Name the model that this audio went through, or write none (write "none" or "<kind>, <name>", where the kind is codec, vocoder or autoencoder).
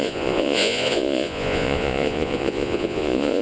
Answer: vocoder, Vocos